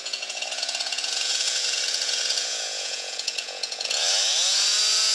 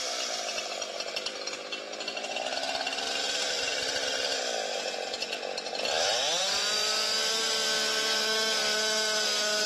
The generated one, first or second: first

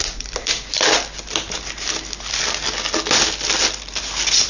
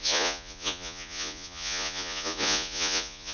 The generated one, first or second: second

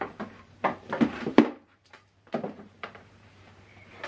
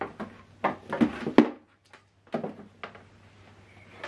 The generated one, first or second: first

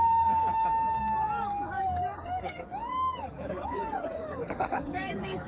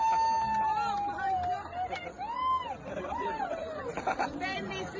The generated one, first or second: first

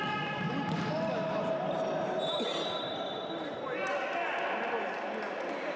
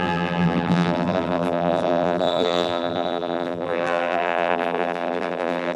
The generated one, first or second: second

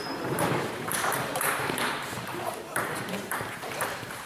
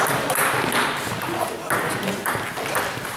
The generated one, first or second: first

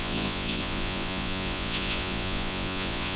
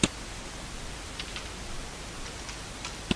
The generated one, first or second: first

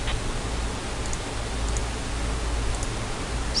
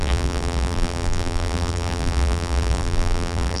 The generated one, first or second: second